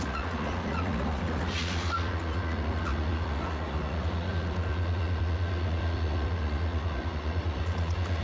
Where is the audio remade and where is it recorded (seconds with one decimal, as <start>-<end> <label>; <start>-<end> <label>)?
0.0-8.2 remade